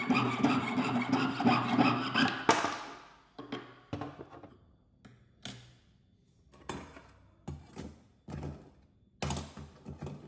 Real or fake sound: real